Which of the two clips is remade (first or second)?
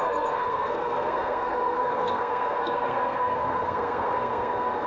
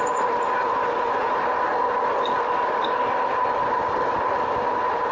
first